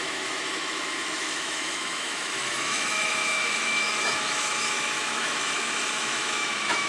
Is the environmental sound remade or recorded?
remade